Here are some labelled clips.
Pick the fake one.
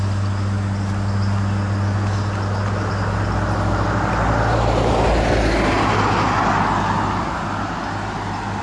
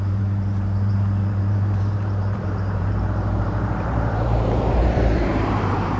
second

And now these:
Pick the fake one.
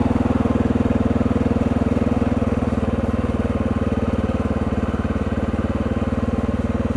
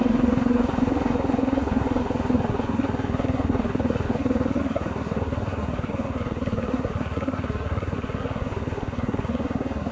second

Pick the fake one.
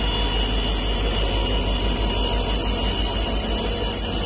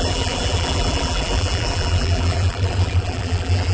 second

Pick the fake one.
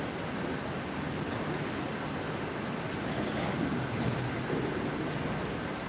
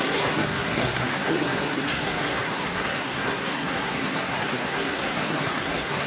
second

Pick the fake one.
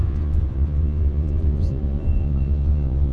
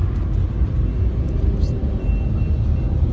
first